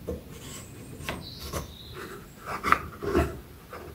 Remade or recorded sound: recorded